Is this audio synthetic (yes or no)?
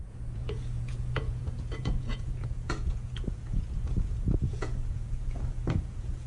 yes